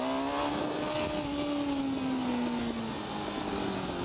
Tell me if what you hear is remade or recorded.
recorded